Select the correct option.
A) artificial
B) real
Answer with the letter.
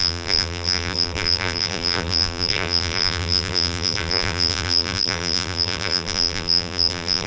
A